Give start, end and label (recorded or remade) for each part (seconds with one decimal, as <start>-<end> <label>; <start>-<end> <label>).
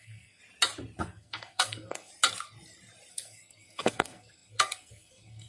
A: 0.0-0.4 remade; 0.4-1.0 recorded; 1.0-2.1 remade; 2.1-3.1 recorded; 3.1-5.5 remade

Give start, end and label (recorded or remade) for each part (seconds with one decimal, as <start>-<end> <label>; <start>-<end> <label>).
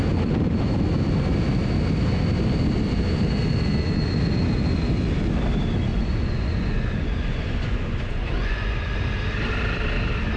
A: 0.0-5.9 recorded; 5.9-8.9 remade; 8.9-10.4 recorded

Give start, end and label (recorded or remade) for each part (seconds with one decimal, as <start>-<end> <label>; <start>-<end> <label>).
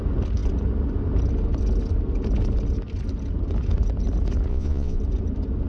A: 0.0-4.5 recorded; 4.5-5.0 remade; 5.0-5.7 recorded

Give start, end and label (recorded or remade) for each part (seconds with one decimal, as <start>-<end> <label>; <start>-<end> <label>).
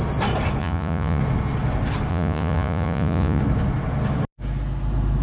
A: 0.0-0.6 recorded; 0.6-1.2 remade; 1.2-2.1 recorded; 2.1-3.4 remade; 3.4-5.2 recorded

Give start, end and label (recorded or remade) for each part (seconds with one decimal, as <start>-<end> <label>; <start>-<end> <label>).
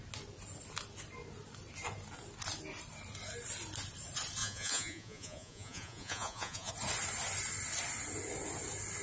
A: 0.0-4.4 recorded; 4.4-6.7 remade; 6.7-9.0 recorded